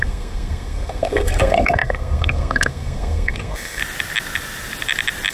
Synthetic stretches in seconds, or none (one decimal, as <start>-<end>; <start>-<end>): 0.0-3.8